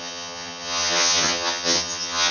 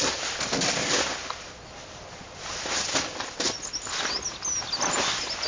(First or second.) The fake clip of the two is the first